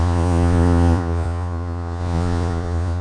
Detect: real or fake fake